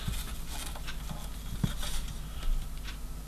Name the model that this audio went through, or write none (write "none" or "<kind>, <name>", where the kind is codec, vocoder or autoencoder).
none